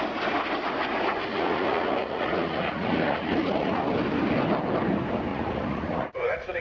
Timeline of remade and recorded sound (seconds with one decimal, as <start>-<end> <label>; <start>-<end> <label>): 0.0-1.3 recorded; 1.3-3.9 remade; 3.9-5.3 recorded; 5.3-6.6 remade